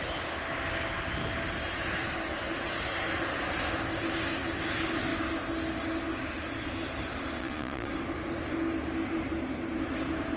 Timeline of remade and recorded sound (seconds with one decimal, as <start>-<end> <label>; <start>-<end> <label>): 0.0-7.4 recorded; 7.4-7.9 remade; 7.9-10.4 recorded